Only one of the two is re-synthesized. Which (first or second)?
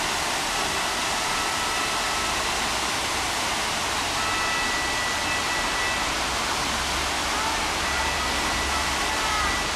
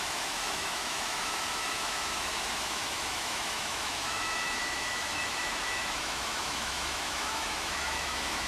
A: second